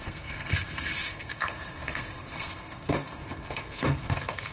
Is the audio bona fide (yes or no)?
no